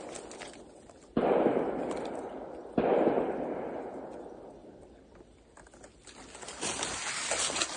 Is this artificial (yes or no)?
no